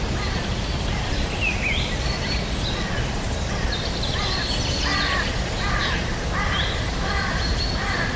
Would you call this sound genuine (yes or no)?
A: yes